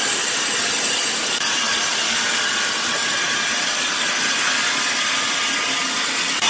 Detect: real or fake fake